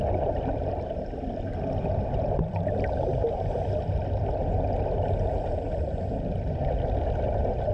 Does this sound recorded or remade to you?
recorded